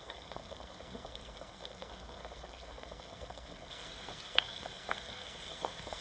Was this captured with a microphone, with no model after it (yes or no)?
no